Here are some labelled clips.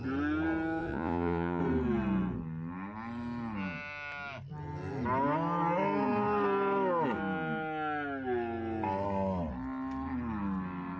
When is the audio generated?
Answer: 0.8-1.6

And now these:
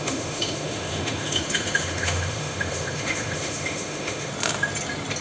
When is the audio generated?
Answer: 0.0-4.3

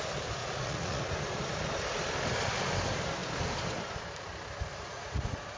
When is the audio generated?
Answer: 0.4-1.0; 4.7-5.6

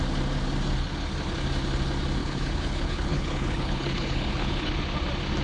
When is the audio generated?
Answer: 2.2-4.7

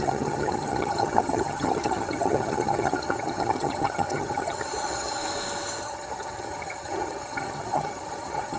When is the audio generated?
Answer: 0.0-5.2; 5.8-8.6

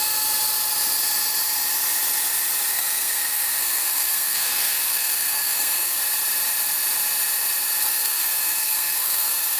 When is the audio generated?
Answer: 2.7-6.0; 7.8-9.6